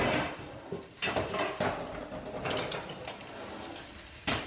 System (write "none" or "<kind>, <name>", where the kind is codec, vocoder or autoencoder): none